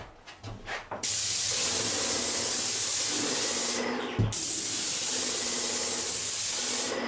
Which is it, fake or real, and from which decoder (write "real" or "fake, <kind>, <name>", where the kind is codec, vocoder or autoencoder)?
real